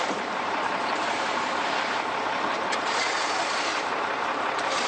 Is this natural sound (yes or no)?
no